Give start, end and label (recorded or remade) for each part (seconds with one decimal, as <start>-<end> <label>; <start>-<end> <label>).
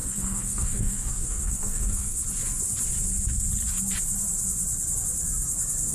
0.0-2.2 remade; 2.2-5.9 recorded